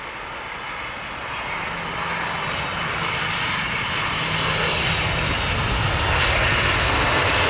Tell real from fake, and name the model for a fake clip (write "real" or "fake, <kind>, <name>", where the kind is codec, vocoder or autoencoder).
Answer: real